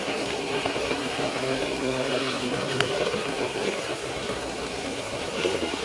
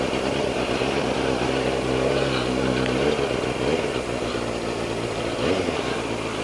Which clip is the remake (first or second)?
first